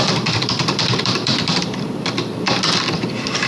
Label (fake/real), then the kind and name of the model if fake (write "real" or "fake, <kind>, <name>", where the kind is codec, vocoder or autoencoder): fake, vocoder, BigVGAN v2